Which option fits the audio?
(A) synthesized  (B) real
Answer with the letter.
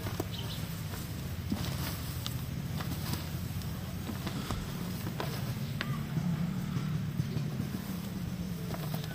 B